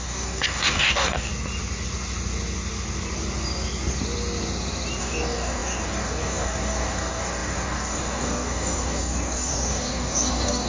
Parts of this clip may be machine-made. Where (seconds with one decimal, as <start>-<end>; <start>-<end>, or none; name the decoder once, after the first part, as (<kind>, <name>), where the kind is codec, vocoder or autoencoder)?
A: 0.0-1.3 (codec, DAC); 5.0-10.7